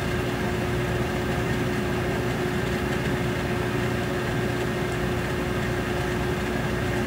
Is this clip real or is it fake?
real